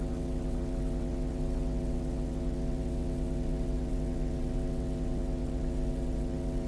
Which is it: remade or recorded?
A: remade